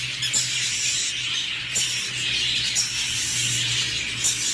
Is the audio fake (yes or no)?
no